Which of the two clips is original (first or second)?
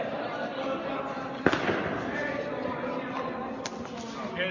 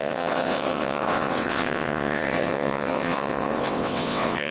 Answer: first